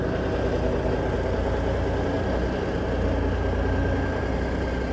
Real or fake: real